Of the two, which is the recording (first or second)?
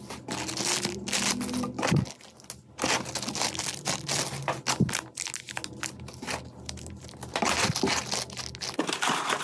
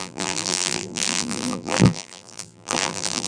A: first